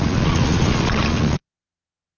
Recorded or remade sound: remade